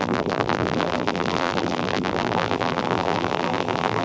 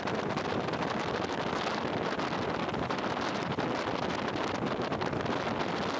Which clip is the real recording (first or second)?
second